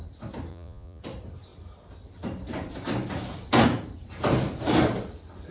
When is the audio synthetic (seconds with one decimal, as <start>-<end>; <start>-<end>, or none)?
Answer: 0.5-1.0